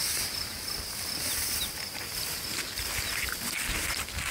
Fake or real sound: real